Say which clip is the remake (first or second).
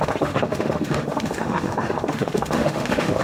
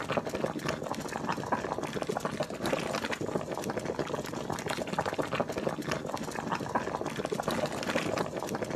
first